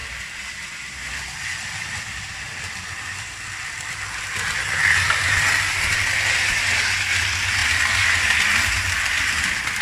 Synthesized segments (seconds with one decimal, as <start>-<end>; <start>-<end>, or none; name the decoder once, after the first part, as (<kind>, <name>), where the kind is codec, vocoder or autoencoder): 0.0-4.6 (vocoder, BigVGAN v2)

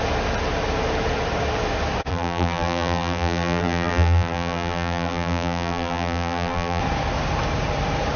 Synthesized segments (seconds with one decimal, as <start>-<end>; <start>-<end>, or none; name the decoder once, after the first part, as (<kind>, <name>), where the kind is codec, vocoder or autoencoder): 2.1-6.8 (vocoder, BigVGAN v2)

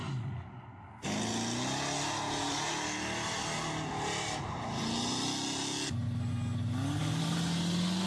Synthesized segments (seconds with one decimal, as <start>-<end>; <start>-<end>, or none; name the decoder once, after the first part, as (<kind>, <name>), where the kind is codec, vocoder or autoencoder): none

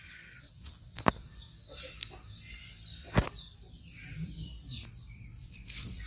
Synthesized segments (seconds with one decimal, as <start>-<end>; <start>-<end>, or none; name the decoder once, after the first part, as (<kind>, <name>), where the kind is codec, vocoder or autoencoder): 0.0-1.5 (vocoder, BigVGAN v2); 5.2-6.1